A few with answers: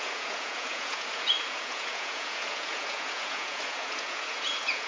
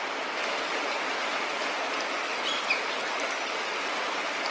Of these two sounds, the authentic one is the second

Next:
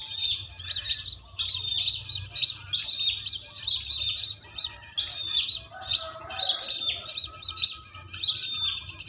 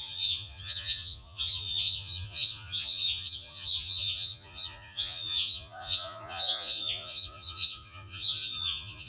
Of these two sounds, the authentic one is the first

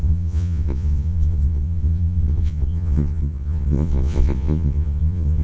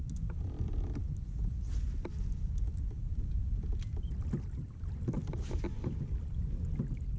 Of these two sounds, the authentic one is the second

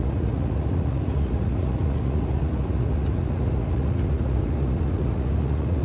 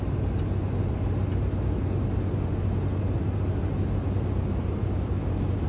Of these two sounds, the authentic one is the second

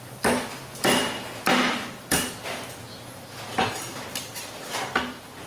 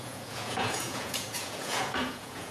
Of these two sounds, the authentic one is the first